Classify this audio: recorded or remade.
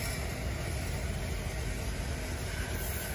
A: recorded